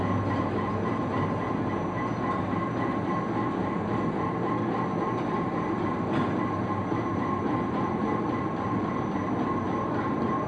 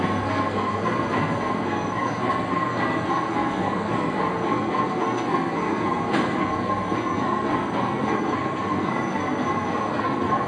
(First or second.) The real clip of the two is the first